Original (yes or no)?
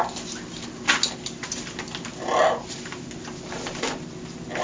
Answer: yes